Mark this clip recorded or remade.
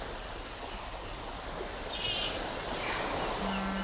recorded